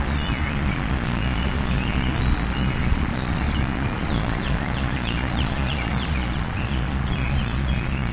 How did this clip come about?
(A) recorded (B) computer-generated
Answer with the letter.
B